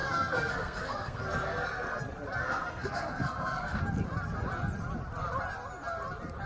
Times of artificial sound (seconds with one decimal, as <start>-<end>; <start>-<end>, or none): 0.0-2.0; 2.4-3.8